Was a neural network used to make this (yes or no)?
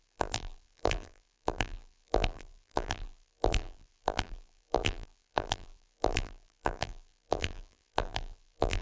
yes